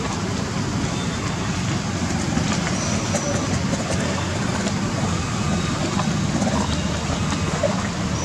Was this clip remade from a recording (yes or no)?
no